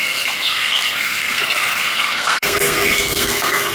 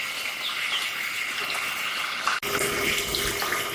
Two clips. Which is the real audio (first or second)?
second